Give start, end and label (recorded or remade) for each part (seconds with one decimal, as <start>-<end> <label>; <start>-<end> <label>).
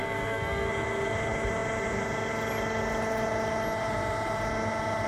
0.0-0.7 remade; 0.7-5.1 recorded